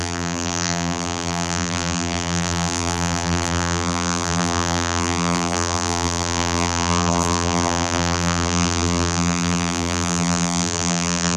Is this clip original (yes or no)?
no